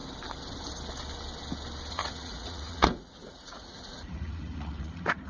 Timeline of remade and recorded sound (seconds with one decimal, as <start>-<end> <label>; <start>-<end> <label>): 0.0-1.9 recorded; 1.9-5.3 remade